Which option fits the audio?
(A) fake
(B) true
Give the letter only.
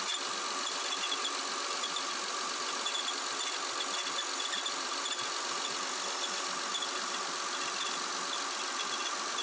B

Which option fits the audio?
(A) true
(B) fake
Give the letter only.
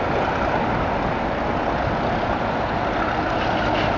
A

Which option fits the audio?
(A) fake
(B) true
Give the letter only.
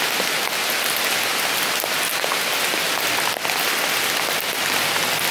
B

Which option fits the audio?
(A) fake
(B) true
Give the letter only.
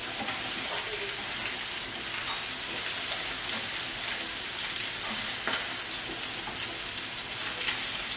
B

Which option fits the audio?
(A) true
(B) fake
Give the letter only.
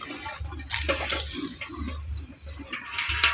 A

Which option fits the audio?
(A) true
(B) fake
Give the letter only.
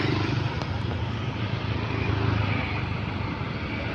A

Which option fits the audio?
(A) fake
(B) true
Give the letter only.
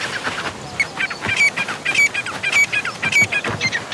B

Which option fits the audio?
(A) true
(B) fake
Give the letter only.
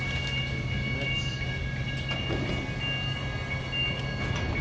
A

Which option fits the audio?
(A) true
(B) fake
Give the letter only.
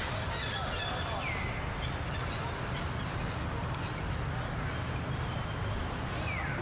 A